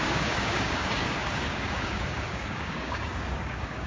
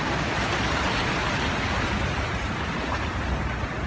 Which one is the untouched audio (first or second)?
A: second